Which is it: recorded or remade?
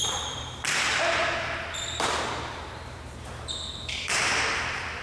remade